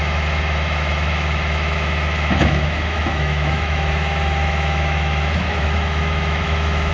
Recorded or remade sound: remade